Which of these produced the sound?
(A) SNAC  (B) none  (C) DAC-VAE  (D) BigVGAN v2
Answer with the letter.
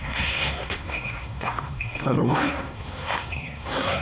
A